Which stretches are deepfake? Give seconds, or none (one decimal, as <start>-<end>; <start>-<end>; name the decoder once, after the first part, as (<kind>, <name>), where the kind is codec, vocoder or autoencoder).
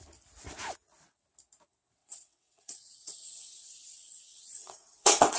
2.0-5.4 (vocoder, WaveNeXt)